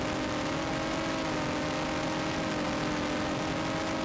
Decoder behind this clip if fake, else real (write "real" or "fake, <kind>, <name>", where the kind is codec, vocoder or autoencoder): real